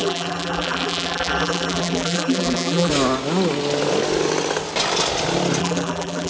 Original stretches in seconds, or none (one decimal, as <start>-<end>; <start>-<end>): 2.9-5.6